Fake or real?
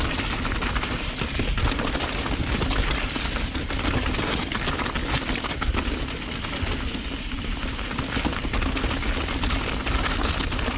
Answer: real